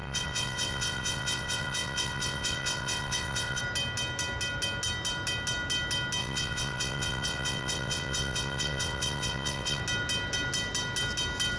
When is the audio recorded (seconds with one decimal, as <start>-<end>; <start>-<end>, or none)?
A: 3.6-6.2; 9.8-11.6